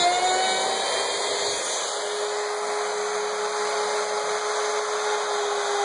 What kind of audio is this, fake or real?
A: real